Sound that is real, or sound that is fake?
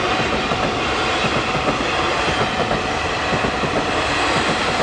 real